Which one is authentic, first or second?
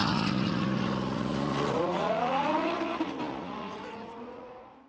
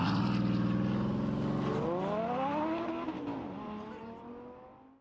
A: second